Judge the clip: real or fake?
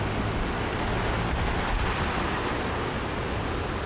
real